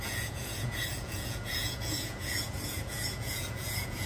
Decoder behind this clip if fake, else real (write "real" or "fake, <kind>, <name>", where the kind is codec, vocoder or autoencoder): fake, vocoder, Vocos